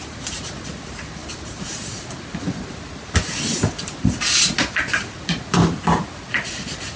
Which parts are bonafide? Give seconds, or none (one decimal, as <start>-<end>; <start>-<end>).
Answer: 0.0-7.0

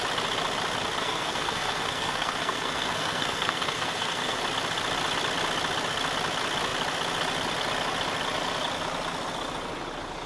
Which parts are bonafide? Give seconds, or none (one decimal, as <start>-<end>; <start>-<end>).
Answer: 0.0-1.0; 4.4-10.3